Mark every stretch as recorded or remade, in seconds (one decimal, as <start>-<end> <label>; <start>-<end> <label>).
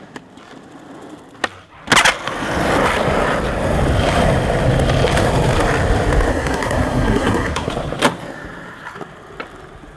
0.0-6.3 recorded; 6.3-7.7 remade; 7.7-10.0 recorded